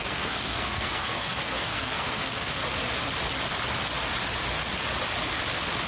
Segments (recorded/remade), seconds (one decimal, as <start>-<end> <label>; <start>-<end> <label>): 0.0-2.6 remade; 2.6-5.9 recorded